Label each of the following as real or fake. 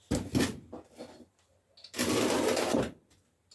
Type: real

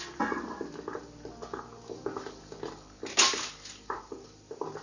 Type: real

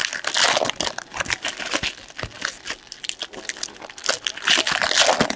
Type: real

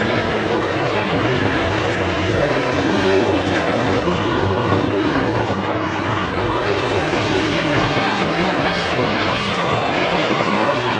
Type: fake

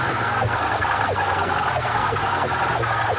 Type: fake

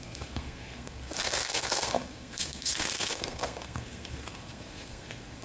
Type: fake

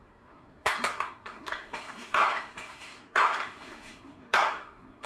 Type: fake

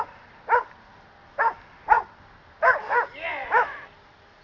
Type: real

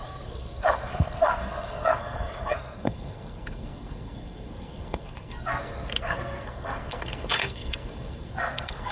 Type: fake